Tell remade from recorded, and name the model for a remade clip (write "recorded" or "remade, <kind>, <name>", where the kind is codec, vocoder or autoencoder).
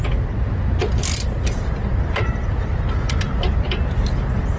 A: recorded